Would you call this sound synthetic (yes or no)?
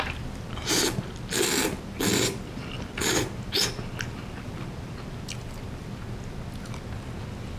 no